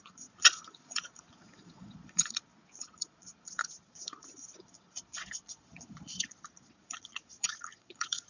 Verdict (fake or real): fake